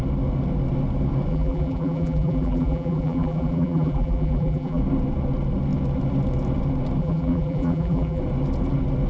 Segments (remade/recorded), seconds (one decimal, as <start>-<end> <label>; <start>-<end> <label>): 0.0-1.3 recorded; 1.3-4.8 remade; 4.8-7.0 recorded; 7.0-8.2 remade; 8.2-9.1 recorded